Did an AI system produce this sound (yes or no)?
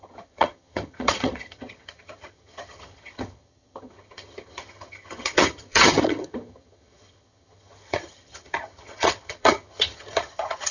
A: yes